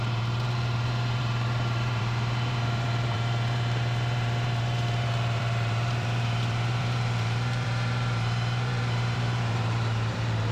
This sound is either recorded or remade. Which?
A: remade